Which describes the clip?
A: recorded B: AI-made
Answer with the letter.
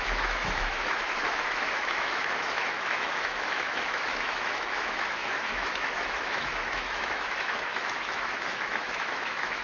B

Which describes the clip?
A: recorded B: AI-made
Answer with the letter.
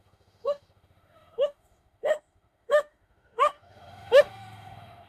B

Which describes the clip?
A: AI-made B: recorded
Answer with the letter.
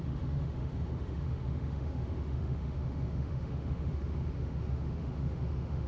A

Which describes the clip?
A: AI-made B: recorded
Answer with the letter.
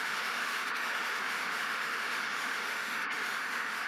A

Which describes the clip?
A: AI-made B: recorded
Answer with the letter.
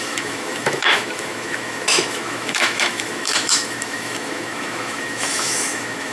A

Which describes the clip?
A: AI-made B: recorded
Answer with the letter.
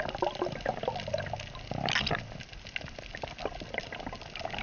B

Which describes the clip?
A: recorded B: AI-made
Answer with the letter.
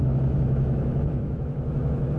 B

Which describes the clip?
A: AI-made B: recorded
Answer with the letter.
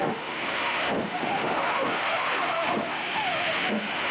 A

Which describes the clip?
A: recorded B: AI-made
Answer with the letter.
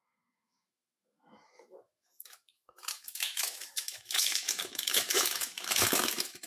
B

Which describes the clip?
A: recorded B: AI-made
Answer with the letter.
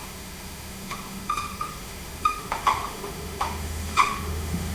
B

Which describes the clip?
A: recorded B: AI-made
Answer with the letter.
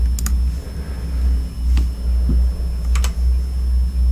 A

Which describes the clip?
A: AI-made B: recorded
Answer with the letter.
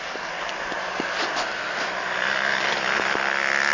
B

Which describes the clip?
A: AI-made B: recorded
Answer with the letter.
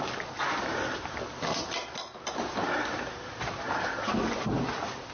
B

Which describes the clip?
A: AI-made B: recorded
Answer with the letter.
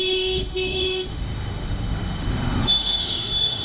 A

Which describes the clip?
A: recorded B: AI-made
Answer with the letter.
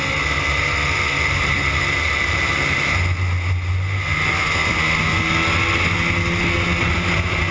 A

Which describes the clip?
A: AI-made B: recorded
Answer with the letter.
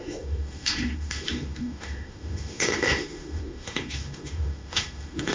A